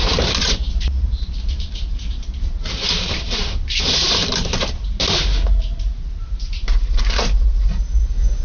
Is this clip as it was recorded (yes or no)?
no